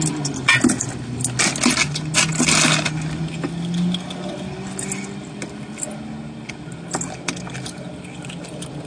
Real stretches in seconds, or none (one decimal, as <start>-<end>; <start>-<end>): 0.0-8.9